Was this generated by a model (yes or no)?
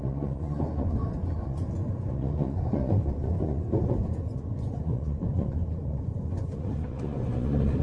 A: yes